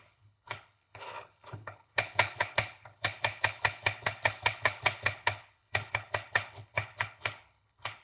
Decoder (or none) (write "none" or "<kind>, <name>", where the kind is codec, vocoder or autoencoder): codec, HILCodec